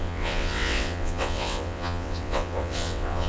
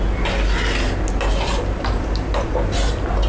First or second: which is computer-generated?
first